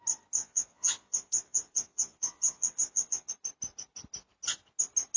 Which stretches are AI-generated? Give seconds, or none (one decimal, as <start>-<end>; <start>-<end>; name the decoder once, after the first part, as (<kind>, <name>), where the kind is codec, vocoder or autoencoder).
0.4-3.3 (vocoder, Vocos)